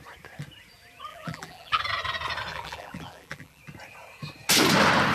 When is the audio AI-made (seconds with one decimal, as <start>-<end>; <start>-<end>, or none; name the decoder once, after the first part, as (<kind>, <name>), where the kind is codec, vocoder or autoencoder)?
1.1-1.8 (vocoder, BigVGAN v2); 2.5-3.6